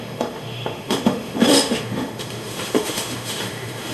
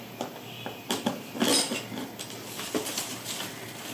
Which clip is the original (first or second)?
second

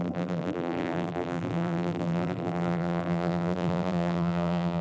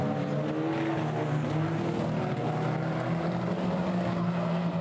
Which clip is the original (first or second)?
second